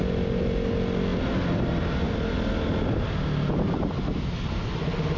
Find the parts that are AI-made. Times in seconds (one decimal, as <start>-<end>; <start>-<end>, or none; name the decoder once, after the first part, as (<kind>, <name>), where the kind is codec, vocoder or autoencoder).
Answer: none